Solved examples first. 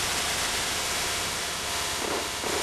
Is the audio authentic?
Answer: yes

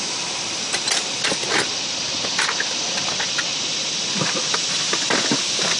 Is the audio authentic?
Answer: yes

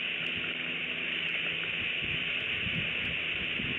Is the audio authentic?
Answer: yes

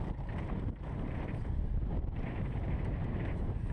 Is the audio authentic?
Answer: no